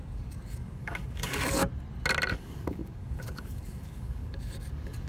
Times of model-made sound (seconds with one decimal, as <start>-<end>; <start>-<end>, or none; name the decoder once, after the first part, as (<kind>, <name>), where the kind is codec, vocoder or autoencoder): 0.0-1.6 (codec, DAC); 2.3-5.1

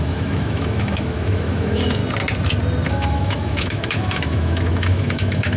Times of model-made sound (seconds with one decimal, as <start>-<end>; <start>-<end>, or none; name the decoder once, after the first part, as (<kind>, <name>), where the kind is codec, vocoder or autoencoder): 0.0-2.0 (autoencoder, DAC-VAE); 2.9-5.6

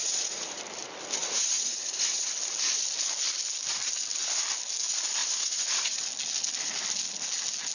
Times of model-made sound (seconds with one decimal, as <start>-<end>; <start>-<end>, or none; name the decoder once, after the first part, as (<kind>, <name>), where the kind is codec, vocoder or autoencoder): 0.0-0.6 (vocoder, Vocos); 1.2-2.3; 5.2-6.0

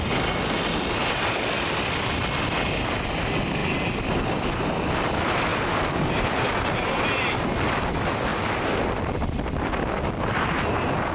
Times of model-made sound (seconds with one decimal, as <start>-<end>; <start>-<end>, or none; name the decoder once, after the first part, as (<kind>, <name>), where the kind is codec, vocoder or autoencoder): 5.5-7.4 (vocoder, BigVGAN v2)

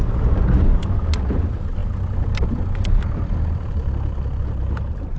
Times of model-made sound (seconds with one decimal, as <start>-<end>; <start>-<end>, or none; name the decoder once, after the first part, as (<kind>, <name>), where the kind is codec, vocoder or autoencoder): none

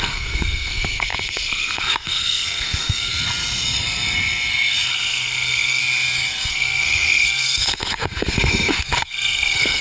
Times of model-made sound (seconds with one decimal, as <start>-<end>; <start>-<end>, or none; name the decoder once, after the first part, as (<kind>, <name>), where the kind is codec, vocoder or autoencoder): 0.0-3.1 (codec, SNAC); 4.9-5.8; 6.5-9.8